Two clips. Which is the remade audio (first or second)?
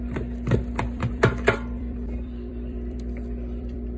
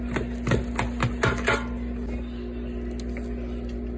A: first